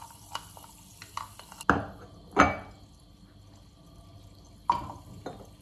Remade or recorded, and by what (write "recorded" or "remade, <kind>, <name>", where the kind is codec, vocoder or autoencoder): recorded